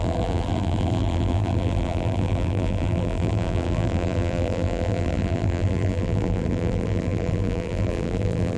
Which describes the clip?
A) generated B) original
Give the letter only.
A